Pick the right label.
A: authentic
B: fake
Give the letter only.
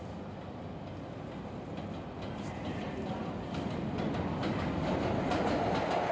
A